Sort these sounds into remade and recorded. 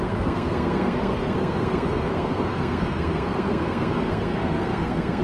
remade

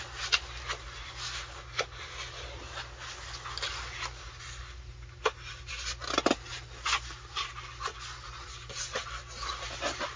recorded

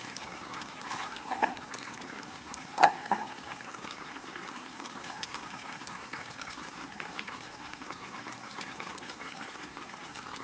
remade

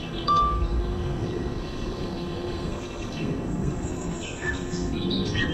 remade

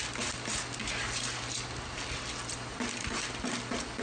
recorded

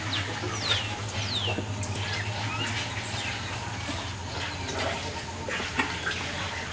recorded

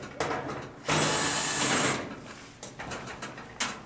recorded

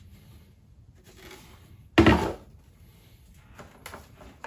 recorded